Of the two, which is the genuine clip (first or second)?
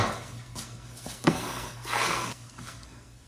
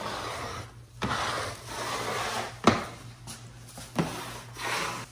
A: second